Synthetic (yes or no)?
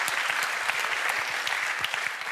no